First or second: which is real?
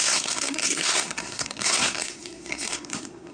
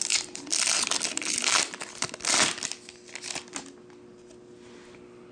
second